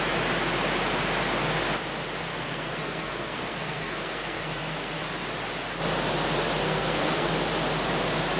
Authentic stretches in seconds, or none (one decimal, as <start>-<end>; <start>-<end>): 0.0-2.3; 5.0-6.6; 7.3-8.4